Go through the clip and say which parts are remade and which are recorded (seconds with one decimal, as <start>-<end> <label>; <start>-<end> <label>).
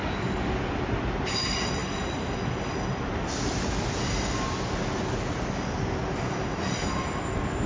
0.0-7.7 recorded